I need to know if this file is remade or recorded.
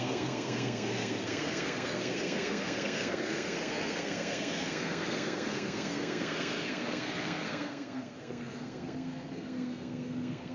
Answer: remade